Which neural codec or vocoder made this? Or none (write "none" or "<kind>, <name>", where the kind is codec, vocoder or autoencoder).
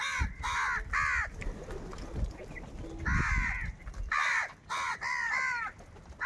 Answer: none